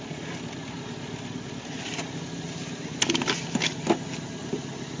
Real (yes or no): yes